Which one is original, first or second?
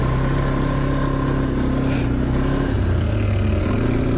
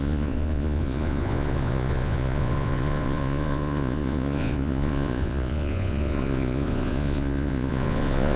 first